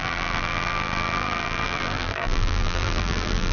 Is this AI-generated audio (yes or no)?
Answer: yes